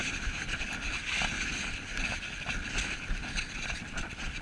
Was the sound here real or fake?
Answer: real